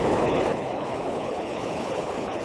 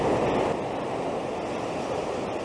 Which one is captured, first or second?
second